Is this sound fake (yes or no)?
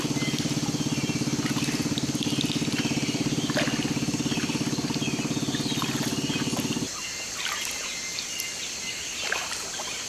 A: no